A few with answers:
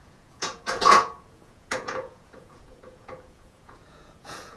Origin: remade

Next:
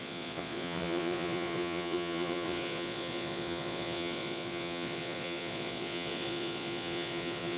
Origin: remade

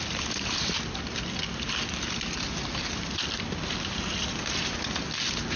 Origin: recorded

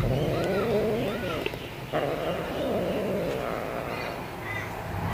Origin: recorded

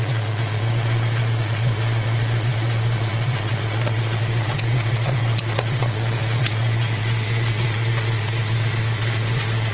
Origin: remade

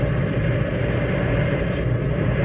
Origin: recorded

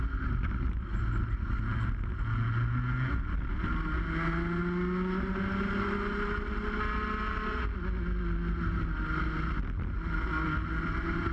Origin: recorded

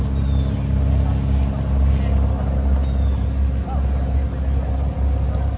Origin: recorded